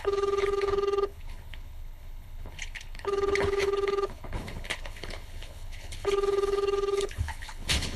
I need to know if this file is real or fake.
fake